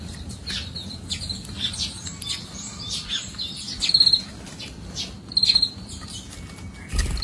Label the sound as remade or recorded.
recorded